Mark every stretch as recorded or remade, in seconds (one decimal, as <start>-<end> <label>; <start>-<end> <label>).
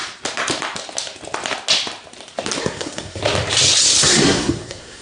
0.0-2.6 recorded; 2.6-3.2 remade; 3.2-4.0 recorded; 4.0-5.0 remade